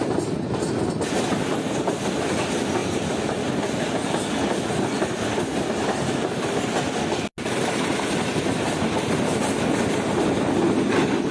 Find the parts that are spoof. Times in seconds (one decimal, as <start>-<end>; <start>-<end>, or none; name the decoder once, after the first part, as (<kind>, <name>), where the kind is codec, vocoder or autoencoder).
none